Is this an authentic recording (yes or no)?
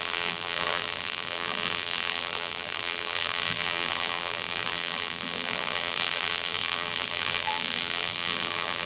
no